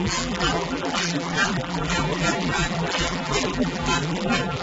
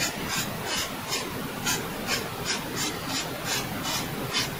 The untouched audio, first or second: second